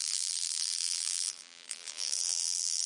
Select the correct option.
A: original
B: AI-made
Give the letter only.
B